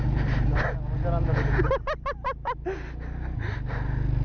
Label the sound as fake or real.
real